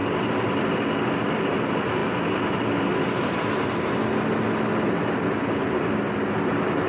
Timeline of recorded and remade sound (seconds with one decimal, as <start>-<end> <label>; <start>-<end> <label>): 0.0-2.0 remade; 2.0-5.9 recorded; 5.9-6.9 remade